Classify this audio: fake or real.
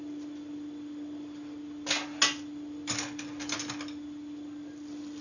real